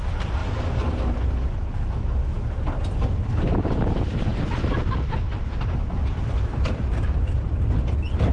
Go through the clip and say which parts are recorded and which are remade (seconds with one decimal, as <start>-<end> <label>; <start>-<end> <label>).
0.0-0.4 remade; 0.4-3.9 recorded; 3.9-8.3 remade